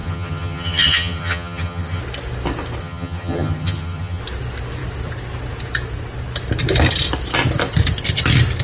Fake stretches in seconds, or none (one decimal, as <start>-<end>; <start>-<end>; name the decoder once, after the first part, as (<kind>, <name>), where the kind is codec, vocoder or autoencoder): 0.0-2.0 (vocoder, HiFi-GAN); 2.8-4.2